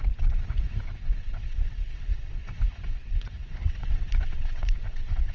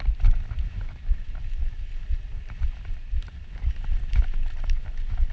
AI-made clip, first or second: first